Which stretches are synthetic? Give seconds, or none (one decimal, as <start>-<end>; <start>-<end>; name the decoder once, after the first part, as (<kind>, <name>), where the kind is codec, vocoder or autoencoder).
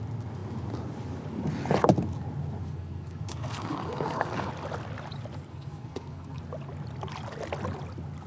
2.6-4.5 (codec, SNAC); 5.5-6.4